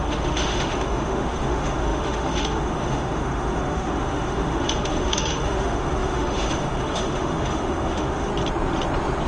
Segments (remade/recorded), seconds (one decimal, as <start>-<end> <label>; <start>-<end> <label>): 0.0-8.3 remade; 8.3-9.3 recorded